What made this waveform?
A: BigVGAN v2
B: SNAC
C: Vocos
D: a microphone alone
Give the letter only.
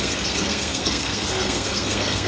B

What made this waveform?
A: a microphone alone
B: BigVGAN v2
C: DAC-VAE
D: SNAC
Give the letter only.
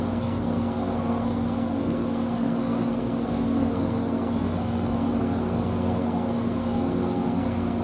D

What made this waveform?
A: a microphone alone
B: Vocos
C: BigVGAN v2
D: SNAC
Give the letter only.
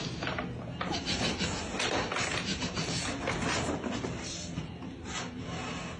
A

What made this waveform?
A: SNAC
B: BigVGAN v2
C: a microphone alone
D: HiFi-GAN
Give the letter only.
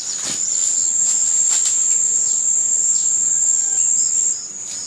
C